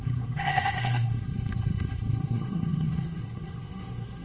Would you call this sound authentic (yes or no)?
no